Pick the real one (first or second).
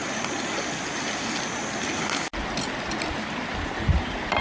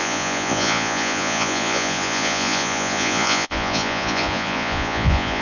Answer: first